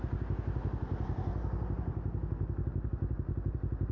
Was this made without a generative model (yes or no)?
yes